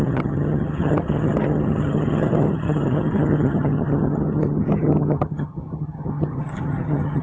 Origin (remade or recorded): remade